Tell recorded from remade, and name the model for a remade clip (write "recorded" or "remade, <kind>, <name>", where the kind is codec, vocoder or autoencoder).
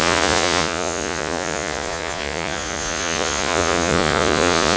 remade, vocoder, Vocos